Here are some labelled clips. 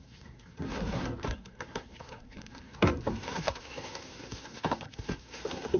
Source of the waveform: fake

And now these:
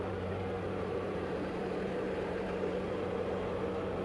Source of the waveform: fake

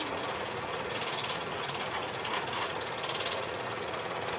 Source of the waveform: fake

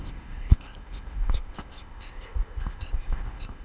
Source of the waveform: fake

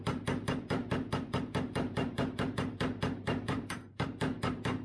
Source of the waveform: fake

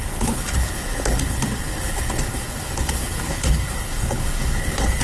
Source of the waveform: fake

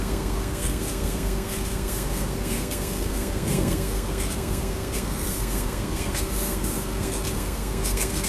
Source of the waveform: fake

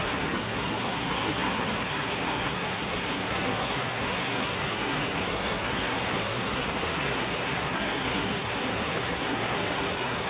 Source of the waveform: fake